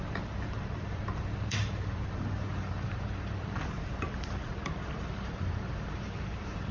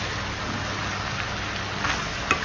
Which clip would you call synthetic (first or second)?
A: first